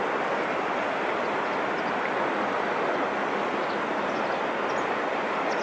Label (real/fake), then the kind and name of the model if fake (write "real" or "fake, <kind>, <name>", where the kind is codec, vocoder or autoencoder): real